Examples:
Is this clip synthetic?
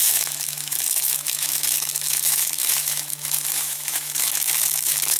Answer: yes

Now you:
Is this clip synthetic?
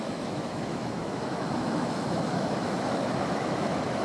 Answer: yes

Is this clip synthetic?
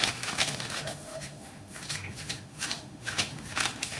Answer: yes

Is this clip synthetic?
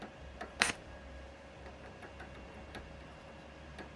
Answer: no